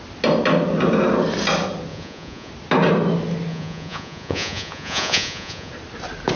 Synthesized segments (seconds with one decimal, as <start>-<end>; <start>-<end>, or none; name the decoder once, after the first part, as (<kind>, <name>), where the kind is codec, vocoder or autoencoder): 1.9-2.5 (vocoder, Vocos); 3.5-5.7